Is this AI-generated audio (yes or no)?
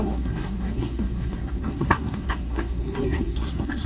yes